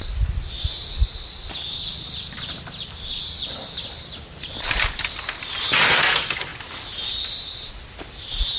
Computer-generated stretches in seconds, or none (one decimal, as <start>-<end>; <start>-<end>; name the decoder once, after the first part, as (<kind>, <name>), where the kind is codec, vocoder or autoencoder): none